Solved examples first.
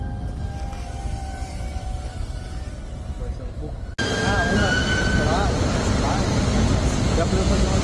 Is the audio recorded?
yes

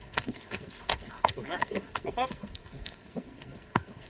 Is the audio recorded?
no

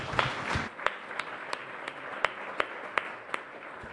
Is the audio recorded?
yes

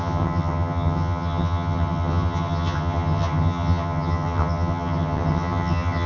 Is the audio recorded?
no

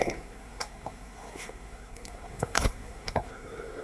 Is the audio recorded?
no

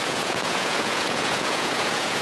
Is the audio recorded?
no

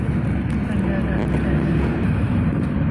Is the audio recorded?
yes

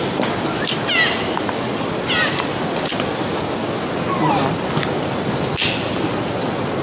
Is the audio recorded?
yes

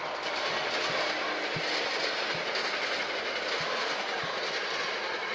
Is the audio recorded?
yes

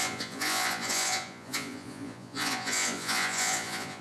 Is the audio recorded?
no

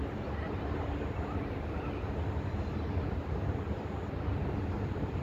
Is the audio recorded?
yes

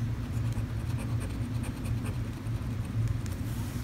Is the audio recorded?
yes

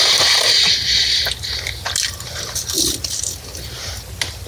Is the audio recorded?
yes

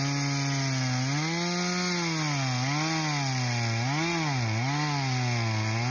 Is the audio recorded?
yes